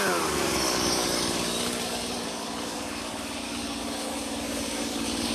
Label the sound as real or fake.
fake